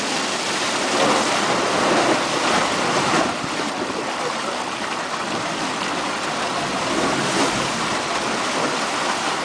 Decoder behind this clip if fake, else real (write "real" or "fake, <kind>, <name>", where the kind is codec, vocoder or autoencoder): real